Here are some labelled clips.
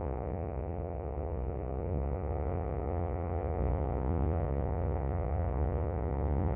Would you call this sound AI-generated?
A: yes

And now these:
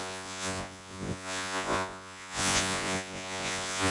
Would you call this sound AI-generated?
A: yes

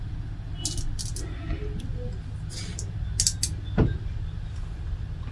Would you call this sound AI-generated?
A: no